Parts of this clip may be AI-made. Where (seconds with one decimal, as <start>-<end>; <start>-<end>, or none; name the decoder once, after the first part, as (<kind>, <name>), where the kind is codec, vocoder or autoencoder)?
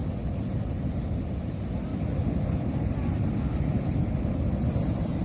1.4-5.2 (vocoder, BigVGAN v2)